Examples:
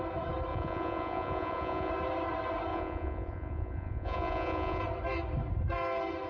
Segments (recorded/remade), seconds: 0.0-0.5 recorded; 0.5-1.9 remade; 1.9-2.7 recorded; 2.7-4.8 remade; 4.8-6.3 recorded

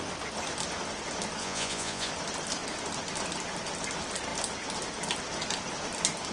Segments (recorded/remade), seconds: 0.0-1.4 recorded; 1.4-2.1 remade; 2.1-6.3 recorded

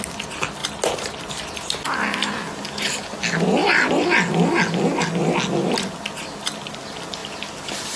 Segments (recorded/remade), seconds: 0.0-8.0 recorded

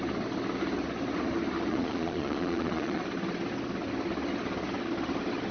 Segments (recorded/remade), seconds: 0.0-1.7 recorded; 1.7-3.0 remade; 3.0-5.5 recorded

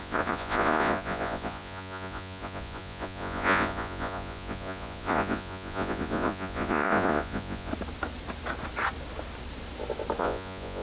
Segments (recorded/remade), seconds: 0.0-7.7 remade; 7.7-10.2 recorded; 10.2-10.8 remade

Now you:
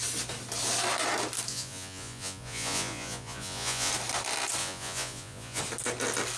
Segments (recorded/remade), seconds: 0.0-1.5 recorded; 1.5-3.9 remade; 3.9-4.6 recorded; 4.6-5.6 remade; 5.6-6.4 recorded